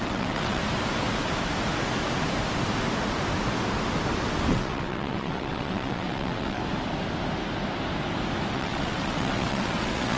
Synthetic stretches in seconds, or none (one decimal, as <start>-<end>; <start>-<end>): 0.0-0.6; 4.5-6.6; 8.5-10.2